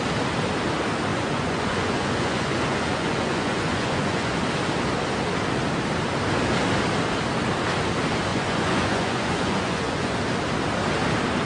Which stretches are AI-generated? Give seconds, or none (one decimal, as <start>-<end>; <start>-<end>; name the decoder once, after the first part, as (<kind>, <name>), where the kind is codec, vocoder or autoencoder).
1.1-4.4 (vocoder, Vocos); 8.3-10.2